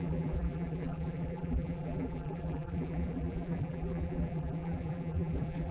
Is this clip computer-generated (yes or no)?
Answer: yes